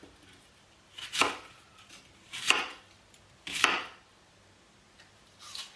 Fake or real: real